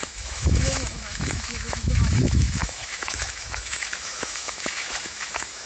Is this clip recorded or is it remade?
remade